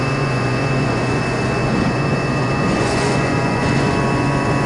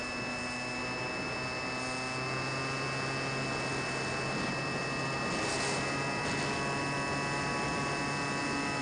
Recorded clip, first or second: second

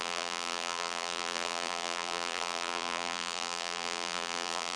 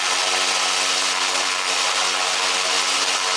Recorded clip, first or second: second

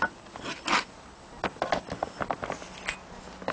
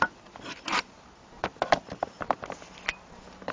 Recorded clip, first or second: first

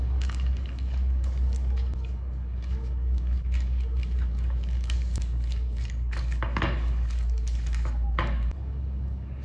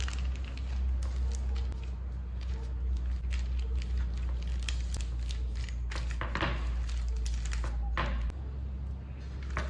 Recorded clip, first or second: second